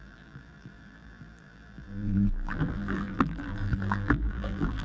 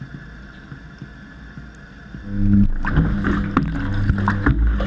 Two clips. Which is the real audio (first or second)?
second